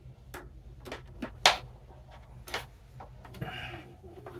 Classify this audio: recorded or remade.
recorded